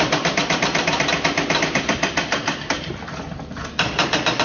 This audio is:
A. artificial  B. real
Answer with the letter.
A